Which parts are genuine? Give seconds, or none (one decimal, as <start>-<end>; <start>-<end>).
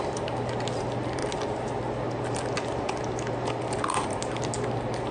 0.0-5.1